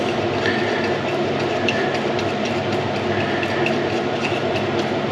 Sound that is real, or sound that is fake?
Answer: real